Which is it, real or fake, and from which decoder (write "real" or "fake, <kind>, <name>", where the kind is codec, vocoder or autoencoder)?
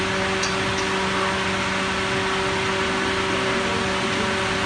real